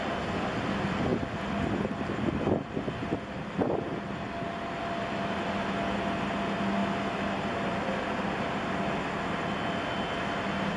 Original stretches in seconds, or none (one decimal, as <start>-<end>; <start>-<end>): 0.0-10.8